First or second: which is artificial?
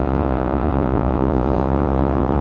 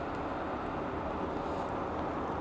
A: first